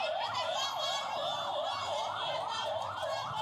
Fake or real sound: real